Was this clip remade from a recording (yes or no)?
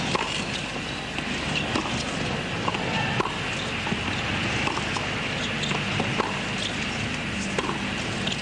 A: no